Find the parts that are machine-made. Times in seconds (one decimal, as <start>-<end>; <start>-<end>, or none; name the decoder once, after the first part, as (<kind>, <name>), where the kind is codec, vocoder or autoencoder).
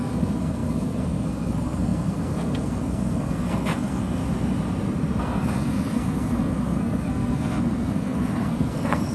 0.0-4.2 (codec, SNAC); 5.2-9.1